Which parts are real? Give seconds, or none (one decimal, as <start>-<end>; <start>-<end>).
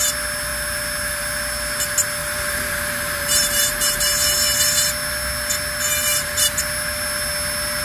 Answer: 0.0-2.2; 4.0-6.1; 6.6-7.8